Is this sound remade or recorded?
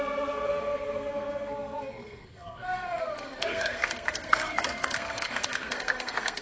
remade